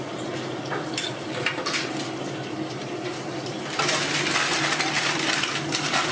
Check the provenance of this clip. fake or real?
real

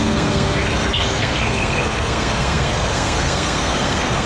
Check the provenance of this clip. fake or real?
fake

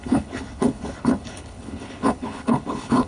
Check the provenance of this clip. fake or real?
fake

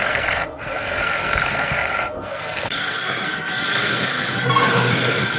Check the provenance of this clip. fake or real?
fake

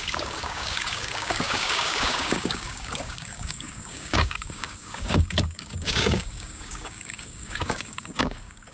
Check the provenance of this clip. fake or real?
fake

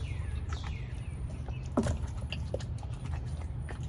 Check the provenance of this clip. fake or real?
fake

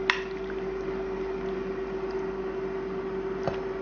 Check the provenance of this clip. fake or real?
real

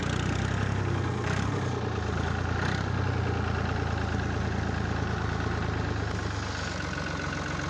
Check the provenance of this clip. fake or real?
real